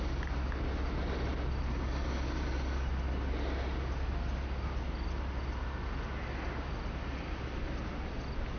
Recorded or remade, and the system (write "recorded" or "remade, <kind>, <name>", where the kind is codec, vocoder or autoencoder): recorded